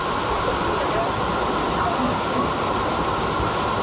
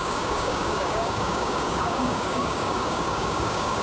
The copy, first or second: second